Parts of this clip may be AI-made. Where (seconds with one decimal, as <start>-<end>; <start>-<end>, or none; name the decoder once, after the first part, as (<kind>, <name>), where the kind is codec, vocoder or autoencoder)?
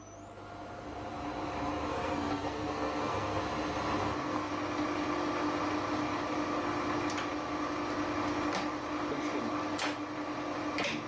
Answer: 1.9-3.4 (codec, SNAC); 4.0-4.5